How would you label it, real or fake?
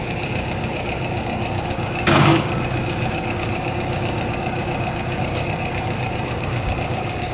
fake